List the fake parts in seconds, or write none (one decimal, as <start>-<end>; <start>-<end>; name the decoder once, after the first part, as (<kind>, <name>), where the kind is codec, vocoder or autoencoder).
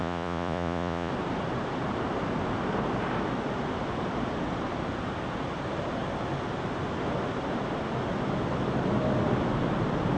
0.0-1.1 (vocoder, Vocos)